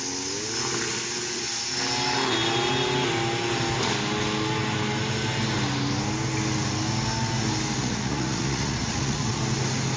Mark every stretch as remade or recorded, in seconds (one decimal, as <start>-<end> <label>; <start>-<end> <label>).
0.0-7.8 recorded; 7.8-9.4 remade; 9.4-10.0 recorded